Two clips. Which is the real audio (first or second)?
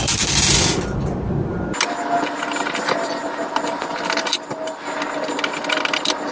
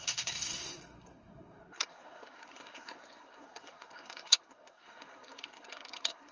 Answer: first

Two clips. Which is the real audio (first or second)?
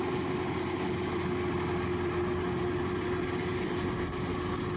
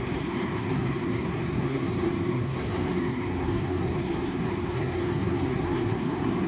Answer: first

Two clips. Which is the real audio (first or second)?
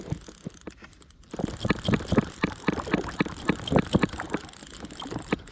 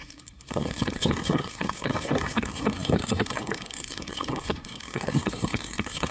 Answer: first